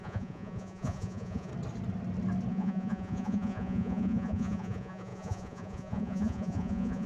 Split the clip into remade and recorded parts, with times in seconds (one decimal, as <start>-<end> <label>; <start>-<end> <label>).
0.0-1.5 remade; 1.5-2.5 recorded; 2.5-7.1 remade